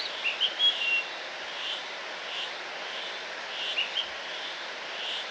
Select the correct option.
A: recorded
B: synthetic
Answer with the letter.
A